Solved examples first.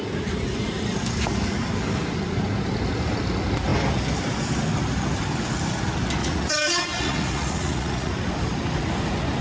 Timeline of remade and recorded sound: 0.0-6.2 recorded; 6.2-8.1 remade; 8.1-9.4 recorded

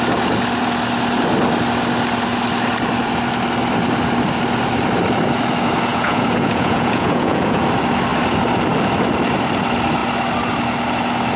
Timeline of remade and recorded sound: 0.0-5.9 recorded; 5.9-7.6 remade; 7.6-11.4 recorded

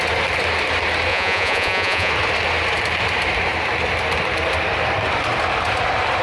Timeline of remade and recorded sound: 0.0-1.1 recorded; 1.1-2.1 remade; 2.1-6.2 recorded

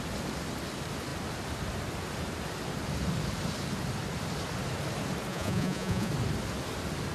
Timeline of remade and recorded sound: 0.0-5.3 recorded; 5.3-6.1 remade; 6.1-7.1 recorded